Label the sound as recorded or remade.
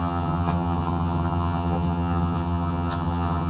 remade